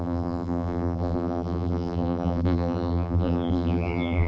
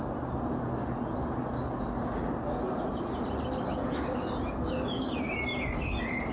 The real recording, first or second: second